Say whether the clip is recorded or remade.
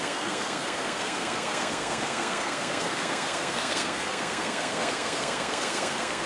remade